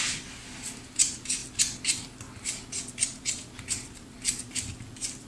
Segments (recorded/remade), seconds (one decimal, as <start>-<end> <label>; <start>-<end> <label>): 0.0-5.3 recorded